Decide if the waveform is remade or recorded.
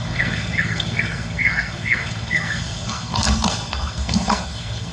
remade